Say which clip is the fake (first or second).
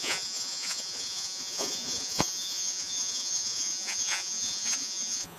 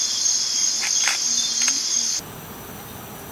first